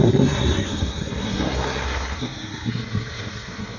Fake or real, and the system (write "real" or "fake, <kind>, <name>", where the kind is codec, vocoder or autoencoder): fake, codec, SNAC